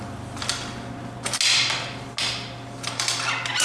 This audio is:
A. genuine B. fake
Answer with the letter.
A